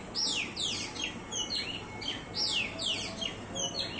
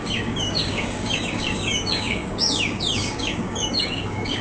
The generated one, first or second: second